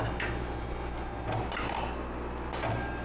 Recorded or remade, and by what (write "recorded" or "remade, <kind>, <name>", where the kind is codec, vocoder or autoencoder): recorded